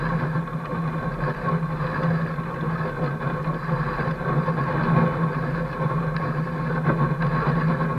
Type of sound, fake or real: real